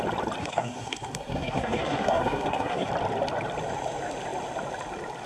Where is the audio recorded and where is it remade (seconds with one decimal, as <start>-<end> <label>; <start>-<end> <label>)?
0.0-0.4 recorded; 0.4-2.9 remade; 2.9-5.3 recorded